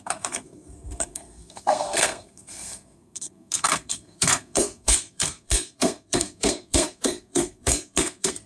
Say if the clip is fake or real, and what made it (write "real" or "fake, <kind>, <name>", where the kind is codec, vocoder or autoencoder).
fake, codec, SNAC